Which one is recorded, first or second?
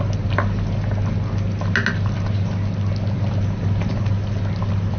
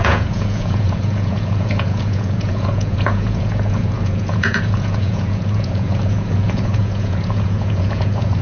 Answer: first